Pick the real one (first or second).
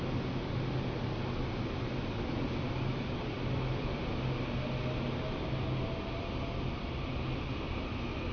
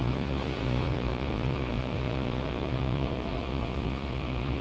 first